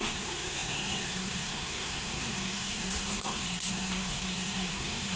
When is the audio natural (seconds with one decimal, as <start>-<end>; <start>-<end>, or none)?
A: none